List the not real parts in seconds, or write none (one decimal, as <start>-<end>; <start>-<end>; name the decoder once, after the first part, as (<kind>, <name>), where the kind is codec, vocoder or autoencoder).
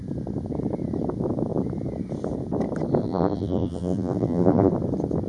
3.0-4.7 (vocoder, BigVGAN v2)